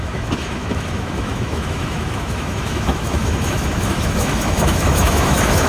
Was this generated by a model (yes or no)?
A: yes